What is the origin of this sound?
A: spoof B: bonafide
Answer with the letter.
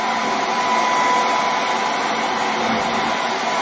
B